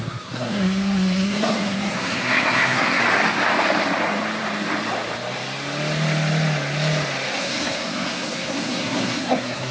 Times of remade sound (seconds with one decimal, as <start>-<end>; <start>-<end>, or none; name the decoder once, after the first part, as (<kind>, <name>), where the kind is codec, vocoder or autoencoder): 0.0-3.0 (codec, SNAC); 7.4-9.7